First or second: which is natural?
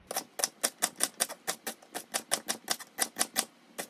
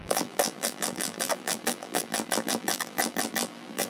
first